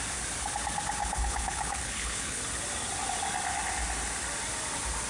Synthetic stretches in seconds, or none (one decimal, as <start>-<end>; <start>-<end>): 1.0-2.4